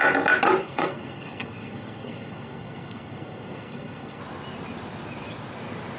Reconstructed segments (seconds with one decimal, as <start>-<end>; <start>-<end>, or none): 0.6-4.2